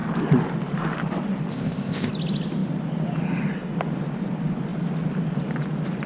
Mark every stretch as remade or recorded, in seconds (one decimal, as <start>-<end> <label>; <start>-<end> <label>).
0.0-1.5 recorded; 1.5-2.1 remade; 2.1-6.1 recorded